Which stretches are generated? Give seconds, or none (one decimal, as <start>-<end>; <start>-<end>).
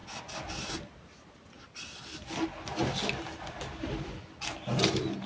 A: none